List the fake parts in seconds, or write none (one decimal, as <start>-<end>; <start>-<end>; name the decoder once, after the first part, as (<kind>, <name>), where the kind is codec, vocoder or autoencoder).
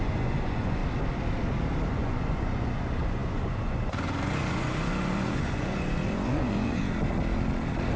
0.0-0.8 (vocoder, Vocos); 1.9-6.8